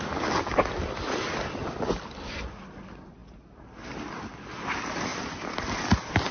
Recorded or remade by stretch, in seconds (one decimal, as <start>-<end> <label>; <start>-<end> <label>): 0.0-6.3 recorded